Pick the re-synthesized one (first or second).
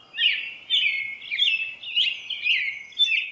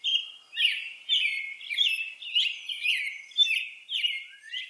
second